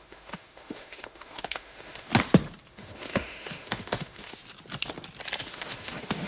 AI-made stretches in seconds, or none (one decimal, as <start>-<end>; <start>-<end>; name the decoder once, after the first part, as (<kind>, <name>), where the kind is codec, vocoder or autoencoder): 0.0-2.1 (autoencoder, DAC-VAE); 2.7-4.4; 5.5-6.3